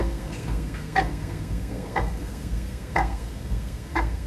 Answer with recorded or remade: remade